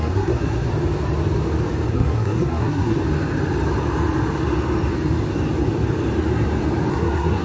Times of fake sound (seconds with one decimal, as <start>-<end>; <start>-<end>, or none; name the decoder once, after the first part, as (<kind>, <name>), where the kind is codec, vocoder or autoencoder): 0.0-0.7 (codec, SNAC); 1.9-3.0; 6.9-7.4